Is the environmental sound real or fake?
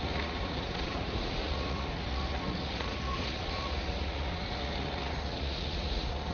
fake